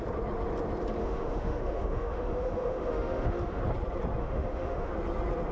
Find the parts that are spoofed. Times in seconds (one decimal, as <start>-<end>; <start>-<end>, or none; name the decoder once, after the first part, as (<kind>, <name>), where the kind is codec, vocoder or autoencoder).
1.0-3.6 (autoencoder, DAC-VAE); 4.2-4.9